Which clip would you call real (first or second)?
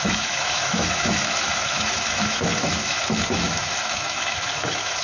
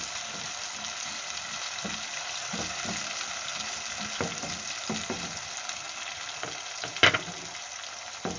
second